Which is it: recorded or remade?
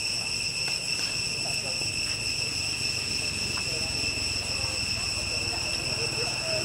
recorded